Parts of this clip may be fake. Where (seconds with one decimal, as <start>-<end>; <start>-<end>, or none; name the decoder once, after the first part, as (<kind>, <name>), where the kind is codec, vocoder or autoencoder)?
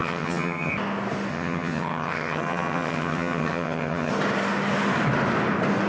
0.0-0.7 (vocoder, HiFi-GAN); 1.3-4.1